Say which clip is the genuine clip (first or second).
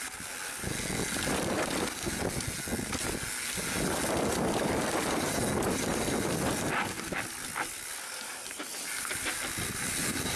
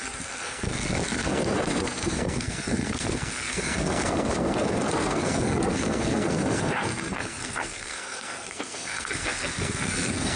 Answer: first